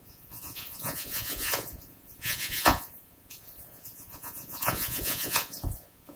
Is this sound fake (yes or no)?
yes